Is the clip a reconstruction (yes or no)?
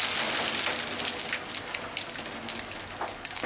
no